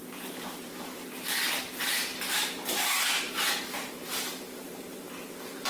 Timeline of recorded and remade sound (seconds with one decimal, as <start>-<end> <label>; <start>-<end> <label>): 0.0-0.7 remade; 0.7-2.1 recorded; 2.1-5.7 remade